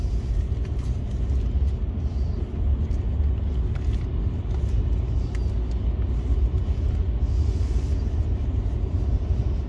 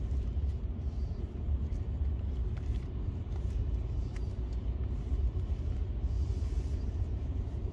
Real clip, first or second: first